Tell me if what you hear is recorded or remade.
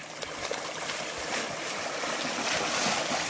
recorded